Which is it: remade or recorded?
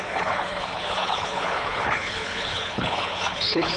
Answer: remade